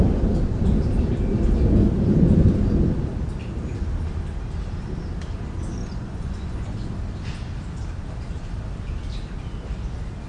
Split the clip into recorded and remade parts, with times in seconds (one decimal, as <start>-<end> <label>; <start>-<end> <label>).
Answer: 0.0-5.8 recorded; 5.8-6.9 remade; 6.9-10.3 recorded